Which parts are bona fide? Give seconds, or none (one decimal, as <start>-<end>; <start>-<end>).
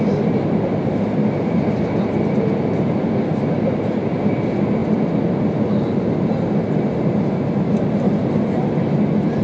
0.0-9.4